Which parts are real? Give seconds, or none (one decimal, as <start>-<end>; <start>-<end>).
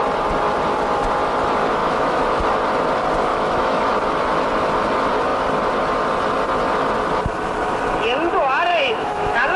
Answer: 0.0-1.8; 2.4-3.3; 3.9-8.7